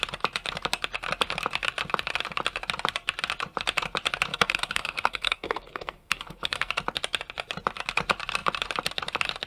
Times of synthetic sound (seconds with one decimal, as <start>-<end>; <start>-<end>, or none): 4.3-6.7